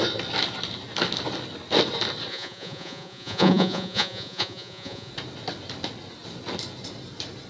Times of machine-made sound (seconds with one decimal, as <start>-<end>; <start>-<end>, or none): 2.3-5.1